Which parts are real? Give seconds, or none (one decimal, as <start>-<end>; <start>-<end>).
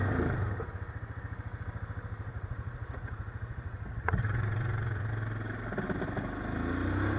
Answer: 0.0-2.3; 5.1-7.2